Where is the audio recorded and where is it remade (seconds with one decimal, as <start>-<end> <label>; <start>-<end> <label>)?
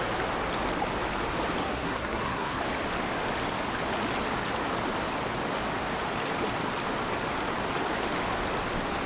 0.0-1.6 recorded; 1.6-2.6 remade; 2.6-9.1 recorded